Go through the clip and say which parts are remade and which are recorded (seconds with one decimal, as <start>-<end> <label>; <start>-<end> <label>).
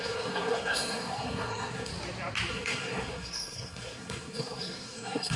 0.0-1.9 remade; 1.9-2.5 recorded; 2.5-5.4 remade